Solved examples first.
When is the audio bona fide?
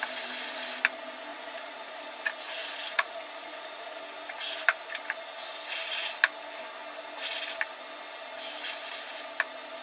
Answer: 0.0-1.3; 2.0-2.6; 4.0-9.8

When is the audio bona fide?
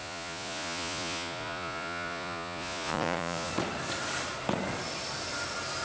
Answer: 3.5-5.8